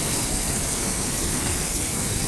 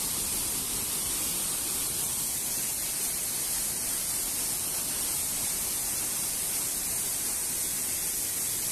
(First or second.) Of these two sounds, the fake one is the first